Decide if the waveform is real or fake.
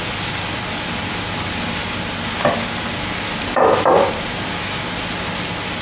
real